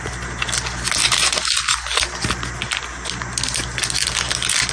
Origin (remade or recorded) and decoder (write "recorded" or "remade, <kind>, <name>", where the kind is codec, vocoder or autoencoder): recorded